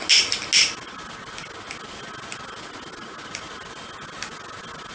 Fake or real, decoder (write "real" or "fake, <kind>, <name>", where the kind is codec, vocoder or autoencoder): real